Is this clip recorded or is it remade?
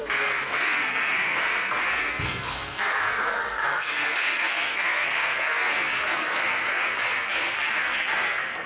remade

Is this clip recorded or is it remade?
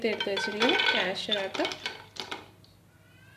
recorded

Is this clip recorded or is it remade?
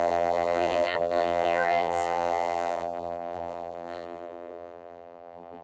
remade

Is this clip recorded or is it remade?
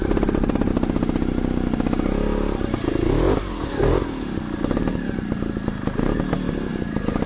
recorded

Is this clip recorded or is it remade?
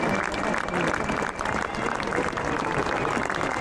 recorded